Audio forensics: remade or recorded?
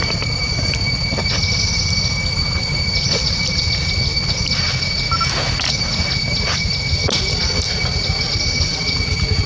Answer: recorded